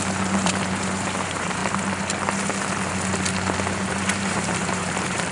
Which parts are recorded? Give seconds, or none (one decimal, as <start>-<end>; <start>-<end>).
1.6-3.8